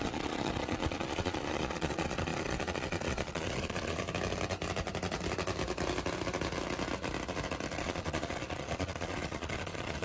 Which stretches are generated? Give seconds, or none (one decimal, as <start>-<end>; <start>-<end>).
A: 0.0-4.0; 7.8-10.0